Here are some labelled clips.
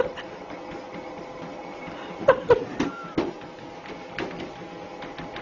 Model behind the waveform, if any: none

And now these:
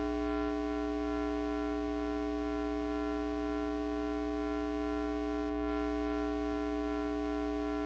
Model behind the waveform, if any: none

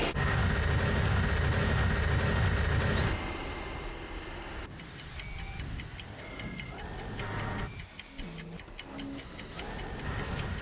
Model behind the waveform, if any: none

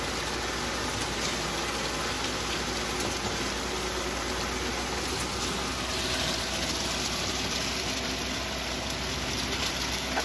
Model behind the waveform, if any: none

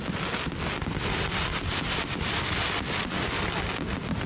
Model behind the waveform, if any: none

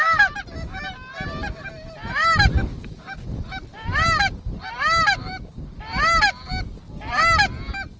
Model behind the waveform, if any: none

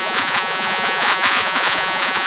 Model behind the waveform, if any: vocoder, Vocos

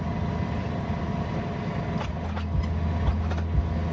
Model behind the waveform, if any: none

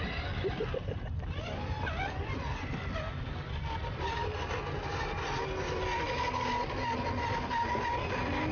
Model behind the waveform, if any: none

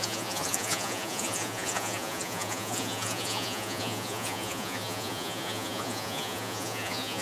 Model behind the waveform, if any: vocoder, Vocos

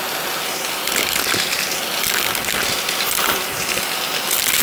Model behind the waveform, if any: none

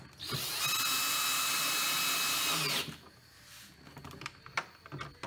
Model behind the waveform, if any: none